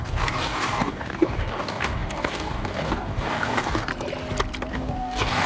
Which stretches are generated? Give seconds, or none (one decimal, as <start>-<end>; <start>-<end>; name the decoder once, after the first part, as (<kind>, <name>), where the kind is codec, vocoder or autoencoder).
0.0-3.9 (codec, DAC); 4.7-5.5